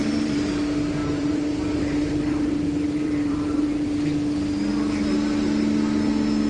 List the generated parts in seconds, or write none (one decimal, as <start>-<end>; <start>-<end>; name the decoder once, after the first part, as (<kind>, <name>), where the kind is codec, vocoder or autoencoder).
0.0-0.5 (vocoder, BigVGAN v2); 1.0-3.6